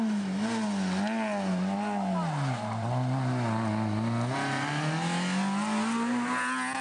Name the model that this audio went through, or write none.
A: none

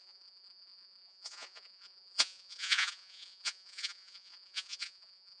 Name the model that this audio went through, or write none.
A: vocoder, Vocos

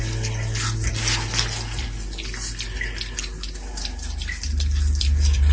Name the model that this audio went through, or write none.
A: none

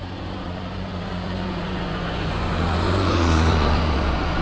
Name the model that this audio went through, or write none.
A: vocoder, Vocos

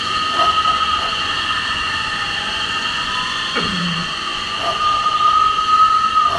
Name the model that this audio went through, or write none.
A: vocoder, Vocos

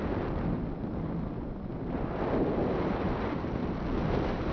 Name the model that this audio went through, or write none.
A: none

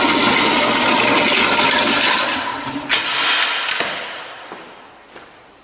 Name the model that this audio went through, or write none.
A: none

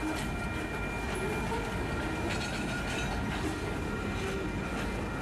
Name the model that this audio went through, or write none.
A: none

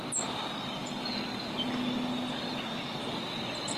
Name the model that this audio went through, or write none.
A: none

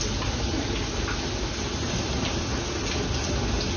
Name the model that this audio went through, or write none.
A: none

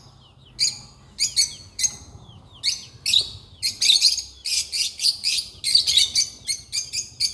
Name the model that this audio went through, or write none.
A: none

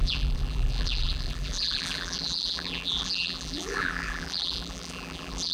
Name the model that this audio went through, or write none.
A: vocoder, BigVGAN v2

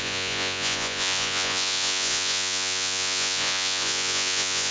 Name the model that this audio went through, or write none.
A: vocoder, Vocos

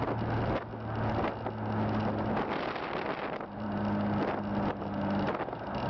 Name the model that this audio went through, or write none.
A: none